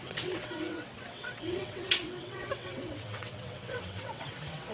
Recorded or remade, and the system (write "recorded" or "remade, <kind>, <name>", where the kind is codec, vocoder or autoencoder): remade, vocoder, WaveNeXt